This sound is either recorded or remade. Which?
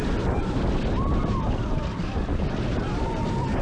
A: remade